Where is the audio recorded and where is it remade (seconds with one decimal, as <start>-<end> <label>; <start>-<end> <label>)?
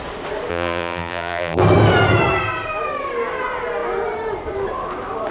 0.0-0.5 recorded; 0.5-1.6 remade; 1.6-5.3 recorded